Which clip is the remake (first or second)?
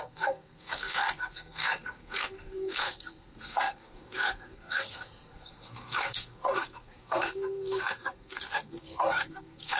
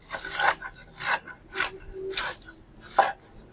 first